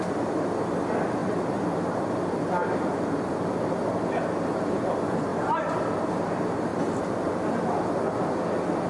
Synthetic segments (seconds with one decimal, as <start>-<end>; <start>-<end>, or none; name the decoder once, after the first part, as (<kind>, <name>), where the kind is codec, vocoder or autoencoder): 1.2-2.1 (vocoder, BigVGAN v2); 2.6-3.3